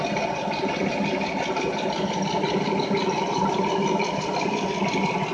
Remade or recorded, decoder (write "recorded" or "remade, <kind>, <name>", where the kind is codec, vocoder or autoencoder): recorded